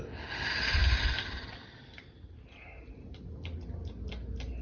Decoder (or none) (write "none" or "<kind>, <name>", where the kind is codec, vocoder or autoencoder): none